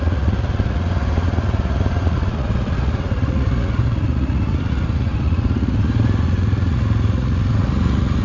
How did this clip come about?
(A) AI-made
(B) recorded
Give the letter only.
A